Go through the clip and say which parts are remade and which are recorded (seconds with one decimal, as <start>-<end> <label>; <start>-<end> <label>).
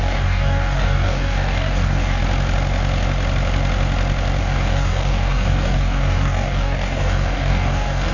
0.0-2.2 remade; 2.2-4.4 recorded; 4.4-8.1 remade